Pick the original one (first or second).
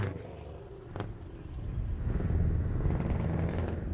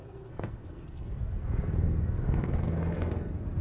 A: first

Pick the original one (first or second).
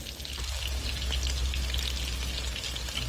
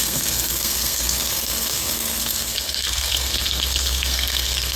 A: first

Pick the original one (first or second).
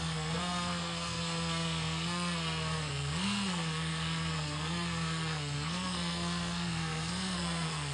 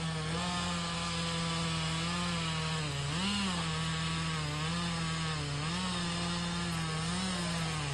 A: second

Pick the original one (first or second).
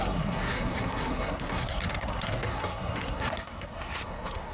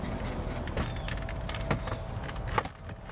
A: second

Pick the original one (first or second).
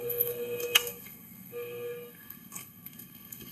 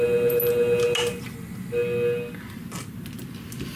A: second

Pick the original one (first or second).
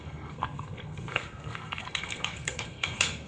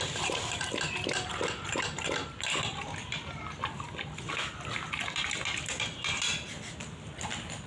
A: second